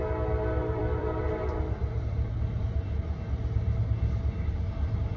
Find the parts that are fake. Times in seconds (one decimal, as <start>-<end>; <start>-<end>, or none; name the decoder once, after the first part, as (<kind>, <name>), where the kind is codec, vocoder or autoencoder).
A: 0.6-1.2 (vocoder, BigVGAN v2)